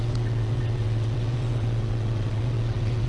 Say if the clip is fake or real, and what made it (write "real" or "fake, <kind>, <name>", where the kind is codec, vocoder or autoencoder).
fake, vocoder, WaveNeXt